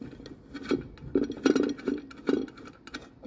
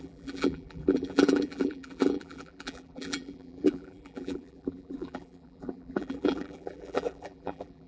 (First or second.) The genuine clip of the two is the first